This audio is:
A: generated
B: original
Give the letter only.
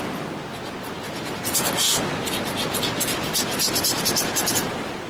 B